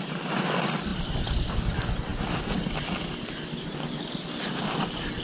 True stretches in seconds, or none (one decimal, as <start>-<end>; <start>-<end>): 0.0-5.2